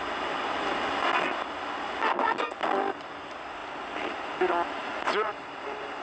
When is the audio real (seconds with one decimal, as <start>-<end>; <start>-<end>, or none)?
0.0-4.8; 5.4-6.0